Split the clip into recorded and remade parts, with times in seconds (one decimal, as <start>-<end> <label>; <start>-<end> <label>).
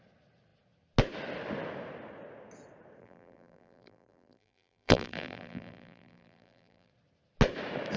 0.0-3.0 recorded; 3.0-6.9 remade; 6.9-8.0 recorded